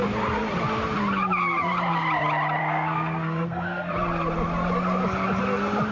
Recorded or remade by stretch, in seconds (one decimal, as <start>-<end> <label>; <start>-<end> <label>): 0.0-2.6 recorded; 2.6-3.9 remade; 3.9-5.9 recorded